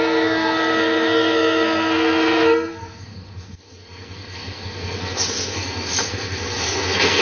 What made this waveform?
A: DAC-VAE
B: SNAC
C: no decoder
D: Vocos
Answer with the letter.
B